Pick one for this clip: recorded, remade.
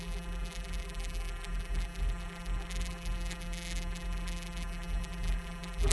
remade